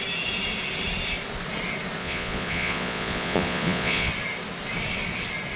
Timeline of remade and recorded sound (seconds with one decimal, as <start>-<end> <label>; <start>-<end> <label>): 0.0-2.0 recorded; 2.0-4.1 remade; 4.1-5.6 recorded